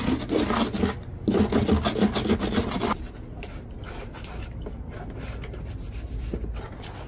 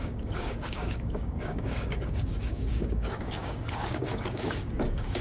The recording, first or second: first